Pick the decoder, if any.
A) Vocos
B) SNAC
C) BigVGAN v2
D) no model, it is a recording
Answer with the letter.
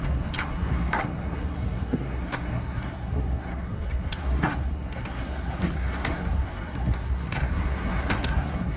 B